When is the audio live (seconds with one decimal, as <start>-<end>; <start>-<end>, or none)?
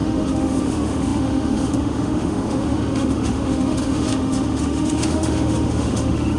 none